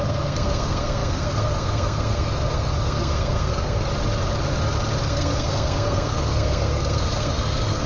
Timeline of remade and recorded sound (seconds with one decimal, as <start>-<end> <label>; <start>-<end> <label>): 0.0-3.9 remade; 3.9-5.0 recorded; 5.0-7.9 remade